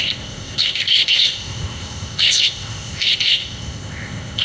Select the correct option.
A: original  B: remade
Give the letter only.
B